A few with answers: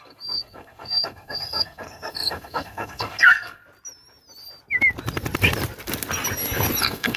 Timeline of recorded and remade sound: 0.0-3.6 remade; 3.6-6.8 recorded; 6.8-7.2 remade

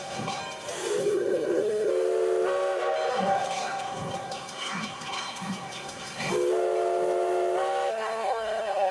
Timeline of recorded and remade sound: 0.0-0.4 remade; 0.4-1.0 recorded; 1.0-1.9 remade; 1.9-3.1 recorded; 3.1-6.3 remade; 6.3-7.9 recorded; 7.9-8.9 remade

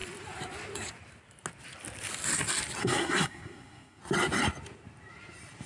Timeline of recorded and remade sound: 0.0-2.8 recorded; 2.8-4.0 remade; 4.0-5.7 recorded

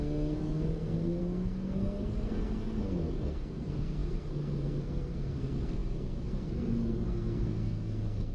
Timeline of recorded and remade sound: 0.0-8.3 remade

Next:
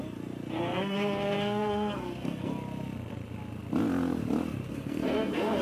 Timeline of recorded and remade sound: 0.0-0.5 recorded; 0.5-2.5 remade; 2.5-4.7 recorded; 4.7-5.6 remade

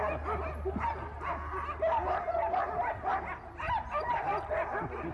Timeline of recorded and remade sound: 0.0-5.1 recorded